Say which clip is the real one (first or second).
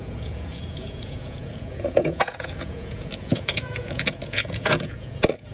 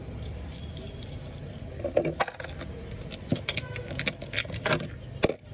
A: second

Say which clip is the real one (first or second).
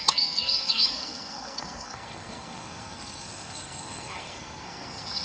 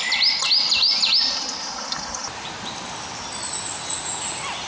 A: second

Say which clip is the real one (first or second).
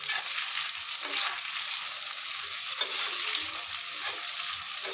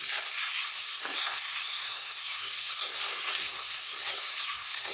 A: first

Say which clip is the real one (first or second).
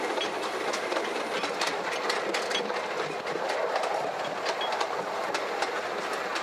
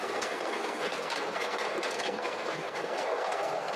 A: first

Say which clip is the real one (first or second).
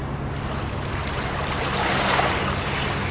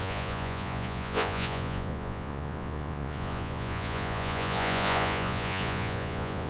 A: first